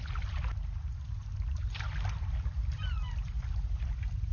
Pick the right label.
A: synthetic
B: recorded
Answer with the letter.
B